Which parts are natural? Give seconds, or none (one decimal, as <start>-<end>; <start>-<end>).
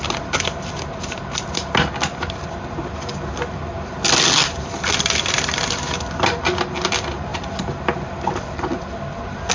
0.0-9.5